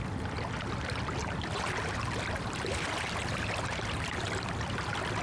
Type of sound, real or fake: real